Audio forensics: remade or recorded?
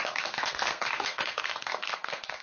remade